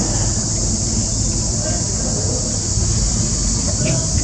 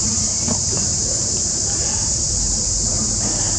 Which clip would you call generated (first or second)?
second